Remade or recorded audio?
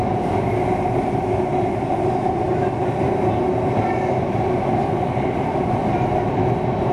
recorded